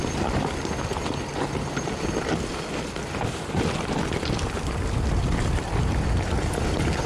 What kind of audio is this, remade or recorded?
recorded